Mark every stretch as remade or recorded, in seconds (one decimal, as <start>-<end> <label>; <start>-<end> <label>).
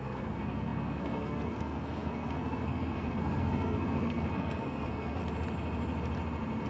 0.0-5.2 remade; 5.2-6.7 recorded